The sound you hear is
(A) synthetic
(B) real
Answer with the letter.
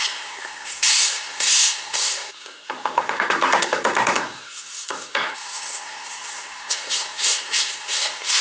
A